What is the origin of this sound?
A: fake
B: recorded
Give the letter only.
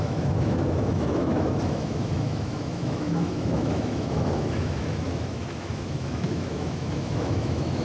A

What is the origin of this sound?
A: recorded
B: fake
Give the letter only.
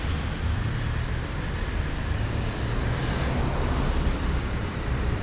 B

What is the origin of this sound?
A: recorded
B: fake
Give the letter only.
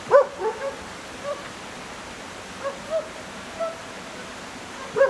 A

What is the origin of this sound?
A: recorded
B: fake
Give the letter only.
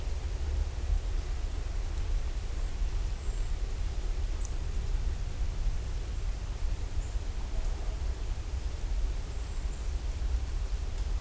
A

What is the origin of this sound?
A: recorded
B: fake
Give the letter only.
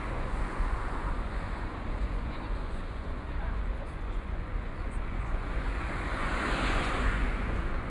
B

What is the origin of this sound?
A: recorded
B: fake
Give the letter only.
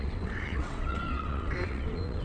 B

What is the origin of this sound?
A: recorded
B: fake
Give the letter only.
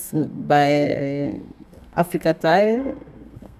B